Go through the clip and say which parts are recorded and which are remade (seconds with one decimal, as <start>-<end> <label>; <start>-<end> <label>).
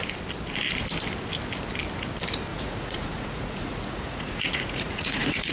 0.0-2.5 recorded; 2.5-5.5 remade